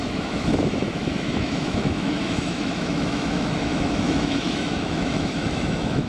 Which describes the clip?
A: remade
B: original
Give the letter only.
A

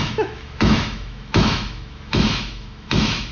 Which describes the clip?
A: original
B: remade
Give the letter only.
B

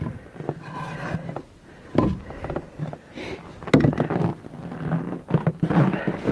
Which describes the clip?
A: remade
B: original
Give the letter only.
B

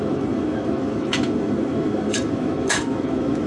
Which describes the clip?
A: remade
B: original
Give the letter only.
A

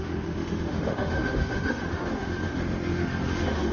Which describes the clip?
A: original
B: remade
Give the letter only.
B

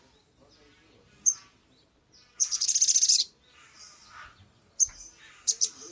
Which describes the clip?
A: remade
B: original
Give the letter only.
B